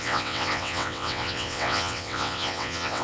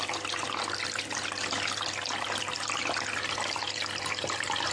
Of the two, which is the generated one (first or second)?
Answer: first